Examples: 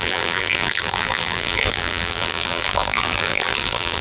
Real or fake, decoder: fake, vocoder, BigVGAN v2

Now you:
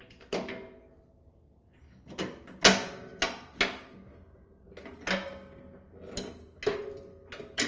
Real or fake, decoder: real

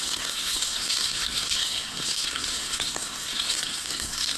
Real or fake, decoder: fake, codec, SNAC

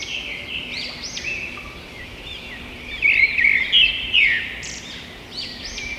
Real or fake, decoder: fake, vocoder, BigVGAN v2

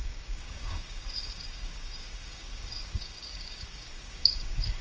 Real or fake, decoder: fake, codec, DAC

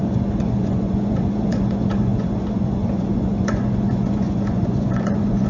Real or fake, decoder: fake, vocoder, Vocos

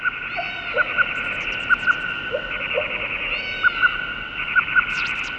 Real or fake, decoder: real